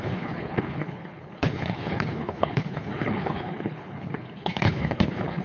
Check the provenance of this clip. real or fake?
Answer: fake